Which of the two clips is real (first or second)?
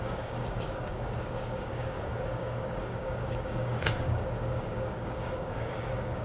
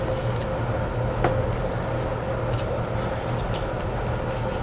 second